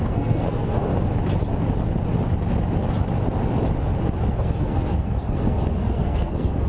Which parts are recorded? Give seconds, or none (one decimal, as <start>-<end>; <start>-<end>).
0.9-4.3